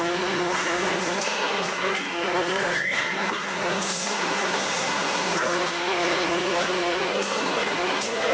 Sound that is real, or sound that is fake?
fake